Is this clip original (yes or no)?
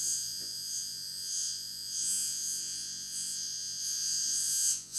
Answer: no